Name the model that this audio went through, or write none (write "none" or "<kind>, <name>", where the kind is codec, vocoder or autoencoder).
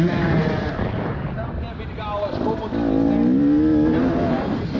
none